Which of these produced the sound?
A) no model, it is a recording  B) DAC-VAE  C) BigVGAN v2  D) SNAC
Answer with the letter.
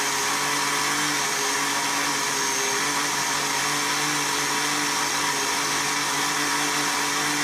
A